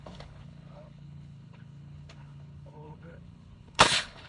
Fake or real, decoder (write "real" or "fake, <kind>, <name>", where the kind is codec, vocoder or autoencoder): fake, codec, HILCodec